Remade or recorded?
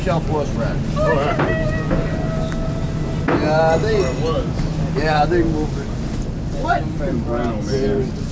recorded